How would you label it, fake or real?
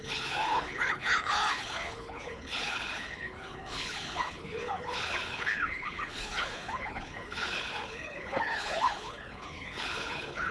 fake